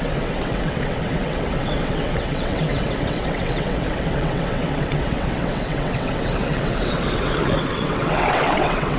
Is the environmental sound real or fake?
fake